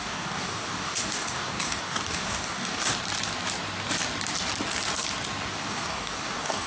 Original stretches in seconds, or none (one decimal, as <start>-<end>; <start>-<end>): 2.9-5.5

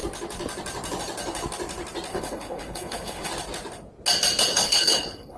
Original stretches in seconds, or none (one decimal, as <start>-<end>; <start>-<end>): 0.0-2.1; 3.3-4.5

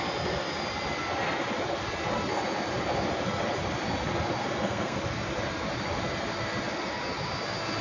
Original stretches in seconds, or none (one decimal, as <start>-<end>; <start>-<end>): 0.0-4.4; 5.0-7.8

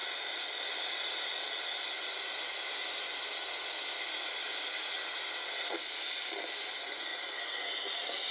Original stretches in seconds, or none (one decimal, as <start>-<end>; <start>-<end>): 0.0-8.3

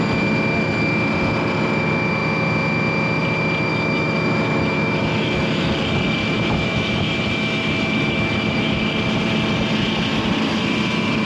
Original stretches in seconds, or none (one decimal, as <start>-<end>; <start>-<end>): 0.0-3.7; 5.7-6.2; 8.8-11.3

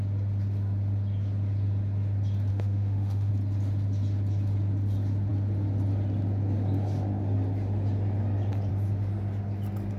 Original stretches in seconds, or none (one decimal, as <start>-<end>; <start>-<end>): 0.0-2.5; 3.3-10.0